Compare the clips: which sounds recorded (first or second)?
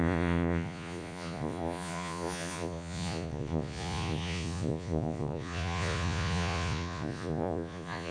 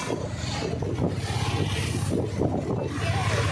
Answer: second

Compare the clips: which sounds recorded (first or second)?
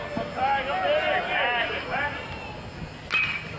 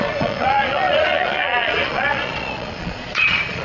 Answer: first